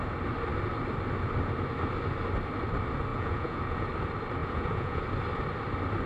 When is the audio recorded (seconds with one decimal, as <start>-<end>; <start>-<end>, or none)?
0.0-3.1; 3.9-4.4; 5.0-6.1